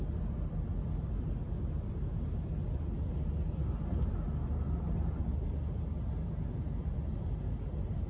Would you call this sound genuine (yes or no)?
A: yes